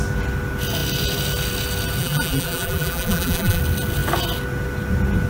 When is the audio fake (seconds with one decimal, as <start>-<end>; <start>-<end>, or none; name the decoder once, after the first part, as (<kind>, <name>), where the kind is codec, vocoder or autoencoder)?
2.0-3.6 (vocoder, BigVGAN v2)